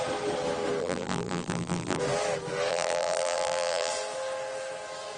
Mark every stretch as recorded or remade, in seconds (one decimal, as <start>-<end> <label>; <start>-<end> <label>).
0.0-0.8 recorded; 0.8-2.0 remade; 2.0-2.7 recorded; 2.7-3.9 remade; 3.9-5.2 recorded